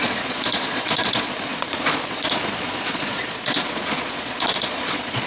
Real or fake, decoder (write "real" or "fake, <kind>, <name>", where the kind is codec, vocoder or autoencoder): fake, vocoder, Vocos